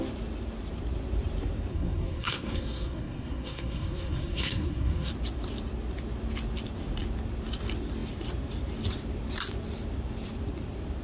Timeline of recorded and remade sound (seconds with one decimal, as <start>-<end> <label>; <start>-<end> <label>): 0.0-1.7 recorded; 1.7-5.1 remade; 5.1-11.0 recorded